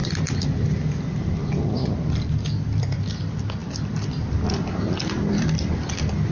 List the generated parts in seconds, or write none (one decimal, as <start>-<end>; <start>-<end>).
none